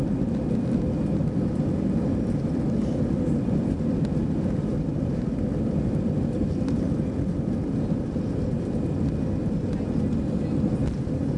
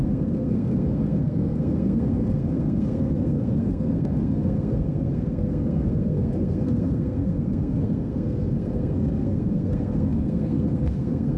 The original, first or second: first